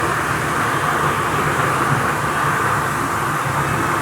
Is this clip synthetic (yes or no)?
no